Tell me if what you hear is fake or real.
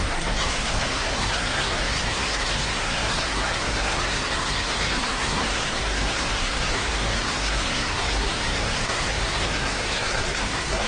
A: fake